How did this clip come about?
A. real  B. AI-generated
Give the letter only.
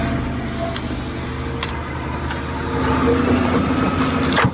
A